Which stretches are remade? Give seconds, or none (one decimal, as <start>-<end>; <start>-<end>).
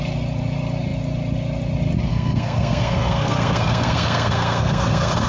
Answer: 2.1-5.3